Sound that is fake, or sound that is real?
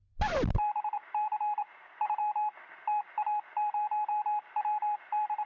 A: fake